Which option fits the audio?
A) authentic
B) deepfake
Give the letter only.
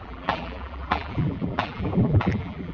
B